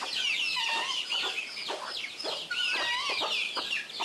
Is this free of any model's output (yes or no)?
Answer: yes